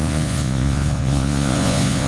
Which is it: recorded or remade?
remade